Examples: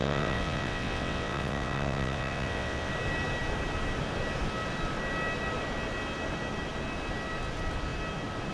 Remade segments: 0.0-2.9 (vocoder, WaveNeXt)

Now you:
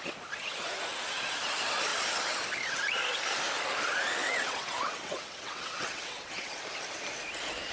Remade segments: 4.2-6.6 (vocoder, WaveNeXt)